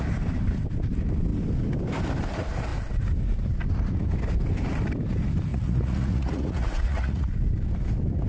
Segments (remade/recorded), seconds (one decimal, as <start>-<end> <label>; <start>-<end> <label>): 0.0-5.5 recorded; 5.5-7.3 remade; 7.3-8.3 recorded